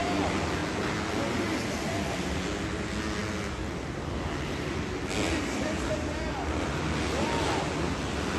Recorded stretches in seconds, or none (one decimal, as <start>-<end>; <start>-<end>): 0.0-8.4